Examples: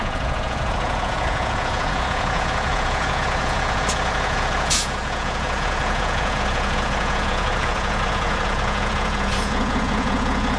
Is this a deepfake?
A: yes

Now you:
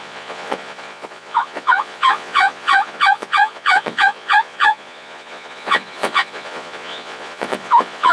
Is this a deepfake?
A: yes